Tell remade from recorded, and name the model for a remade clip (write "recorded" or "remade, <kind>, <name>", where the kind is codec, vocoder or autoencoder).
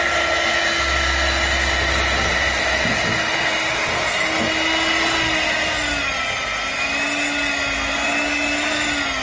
recorded